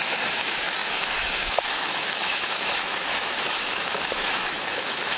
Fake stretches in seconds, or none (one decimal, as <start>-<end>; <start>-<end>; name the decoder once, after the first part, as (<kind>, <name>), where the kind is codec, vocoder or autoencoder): 0.0-5.2 (autoencoder, DAC-VAE)